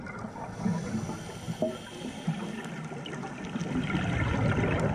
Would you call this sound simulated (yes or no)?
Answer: no